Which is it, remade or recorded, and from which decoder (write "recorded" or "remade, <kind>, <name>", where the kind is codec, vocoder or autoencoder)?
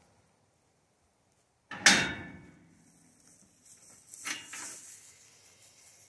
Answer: recorded